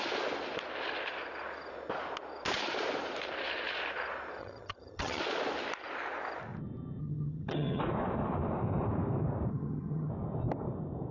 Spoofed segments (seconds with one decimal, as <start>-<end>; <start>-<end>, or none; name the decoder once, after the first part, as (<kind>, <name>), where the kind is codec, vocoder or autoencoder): 4.4-5.2 (vocoder, HiFi-GAN); 7.0-7.8; 9.5-10.1